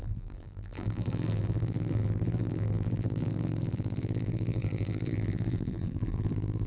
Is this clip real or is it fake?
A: fake